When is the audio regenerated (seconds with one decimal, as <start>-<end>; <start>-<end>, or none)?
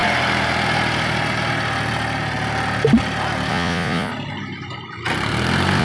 3.5-4.1